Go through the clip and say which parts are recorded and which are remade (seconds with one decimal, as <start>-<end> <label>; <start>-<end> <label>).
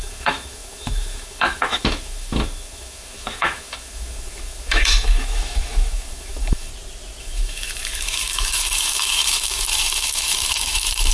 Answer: 0.0-6.7 remade; 6.7-7.2 recorded; 7.2-11.1 remade